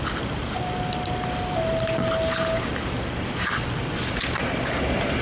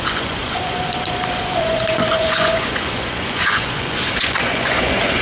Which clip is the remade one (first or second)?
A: second